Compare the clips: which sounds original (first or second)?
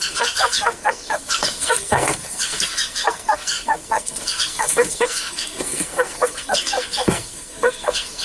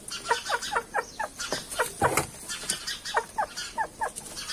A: second